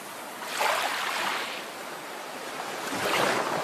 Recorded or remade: recorded